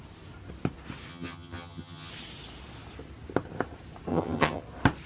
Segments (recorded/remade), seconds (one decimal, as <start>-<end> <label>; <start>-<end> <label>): 0.0-1.1 recorded; 1.1-2.1 remade; 2.1-4.1 recorded; 4.1-4.6 remade; 4.6-5.1 recorded